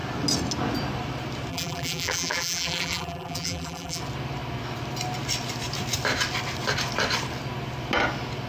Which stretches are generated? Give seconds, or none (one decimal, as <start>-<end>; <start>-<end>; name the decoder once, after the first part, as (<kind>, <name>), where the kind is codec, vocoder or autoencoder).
1.5-4.0 (vocoder, BigVGAN v2)